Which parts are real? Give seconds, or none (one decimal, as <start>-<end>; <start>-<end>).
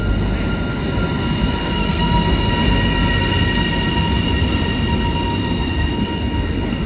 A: 0.0-1.6; 2.5-5.4